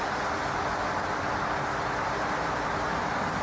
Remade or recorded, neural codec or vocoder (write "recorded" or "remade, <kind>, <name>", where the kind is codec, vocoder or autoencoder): recorded